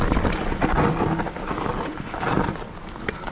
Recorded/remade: recorded